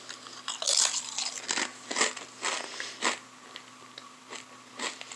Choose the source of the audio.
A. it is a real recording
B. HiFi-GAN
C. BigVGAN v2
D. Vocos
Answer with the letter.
A